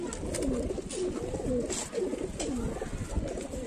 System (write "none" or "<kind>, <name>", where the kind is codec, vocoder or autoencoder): none